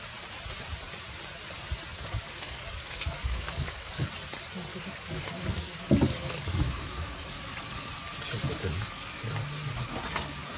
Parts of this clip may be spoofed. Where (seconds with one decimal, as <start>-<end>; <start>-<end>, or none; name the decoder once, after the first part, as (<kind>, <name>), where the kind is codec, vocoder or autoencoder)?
1.9-4.1 (codec, DAC); 4.7-7.9; 8.5-9.2